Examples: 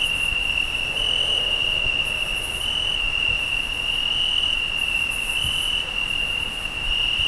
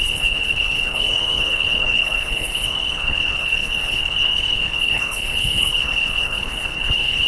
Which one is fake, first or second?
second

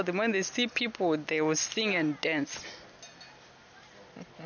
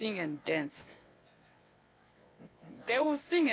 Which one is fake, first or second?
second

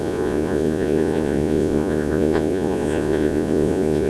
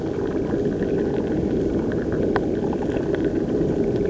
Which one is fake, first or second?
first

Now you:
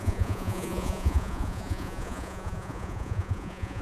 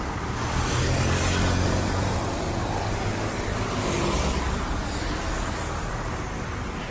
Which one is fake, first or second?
first